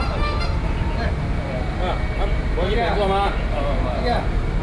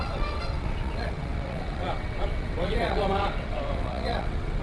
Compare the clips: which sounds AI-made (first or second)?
second